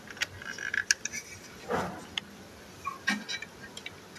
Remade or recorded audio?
recorded